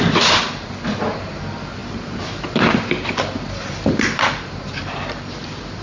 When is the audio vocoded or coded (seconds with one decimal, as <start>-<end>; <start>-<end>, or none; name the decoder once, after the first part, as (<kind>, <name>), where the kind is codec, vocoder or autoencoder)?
none